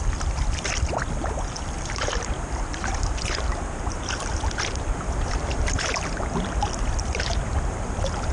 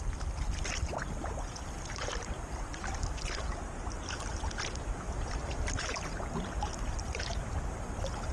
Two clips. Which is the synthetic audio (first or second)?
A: first